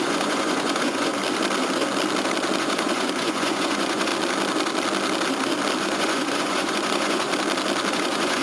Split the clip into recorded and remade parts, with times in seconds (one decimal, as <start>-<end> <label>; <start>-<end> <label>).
0.0-1.1 remade; 1.1-2.6 recorded; 2.6-4.1 remade; 4.1-5.8 recorded; 5.8-7.3 remade; 7.3-7.9 recorded; 7.9-8.4 remade